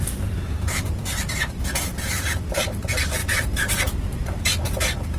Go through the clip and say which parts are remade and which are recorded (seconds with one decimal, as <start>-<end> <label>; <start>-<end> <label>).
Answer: 0.0-5.2 remade